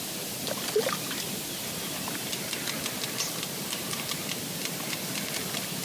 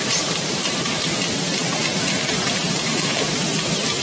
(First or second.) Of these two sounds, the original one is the first